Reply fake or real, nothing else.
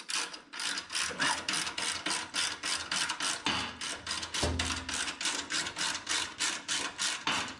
real